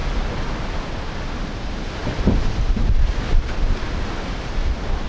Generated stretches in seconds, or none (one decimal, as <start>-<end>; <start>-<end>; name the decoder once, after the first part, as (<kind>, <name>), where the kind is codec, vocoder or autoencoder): 0.0-1.2 (vocoder, BigVGAN v2); 2.0-4.6